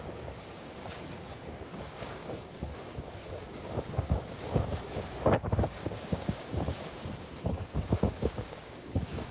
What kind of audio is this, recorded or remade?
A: remade